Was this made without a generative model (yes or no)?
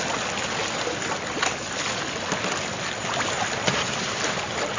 yes